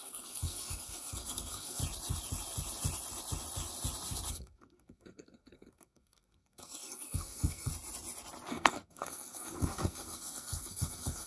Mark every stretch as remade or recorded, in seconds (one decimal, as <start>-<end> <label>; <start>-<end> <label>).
0.0-1.8 remade; 1.8-4.3 recorded; 4.3-7.7 remade; 7.7-8.5 recorded; 8.5-11.3 remade